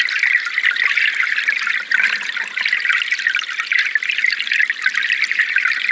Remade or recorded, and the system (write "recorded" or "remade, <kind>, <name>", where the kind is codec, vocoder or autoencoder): recorded